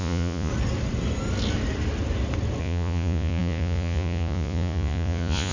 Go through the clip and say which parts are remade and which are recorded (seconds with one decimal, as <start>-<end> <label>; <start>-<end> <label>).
0.0-0.5 remade; 0.5-2.6 recorded; 2.6-5.5 remade